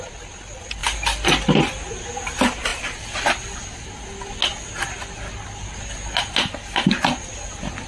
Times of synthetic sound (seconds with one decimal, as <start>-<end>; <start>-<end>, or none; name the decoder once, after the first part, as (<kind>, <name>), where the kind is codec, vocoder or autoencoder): none